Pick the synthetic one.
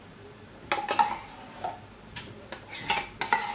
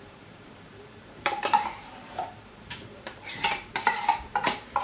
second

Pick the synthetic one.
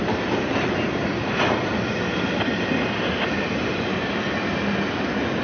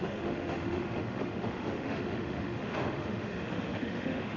second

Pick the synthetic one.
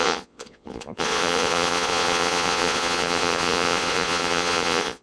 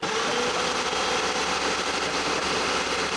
first